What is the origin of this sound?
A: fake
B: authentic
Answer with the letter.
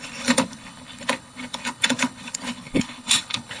A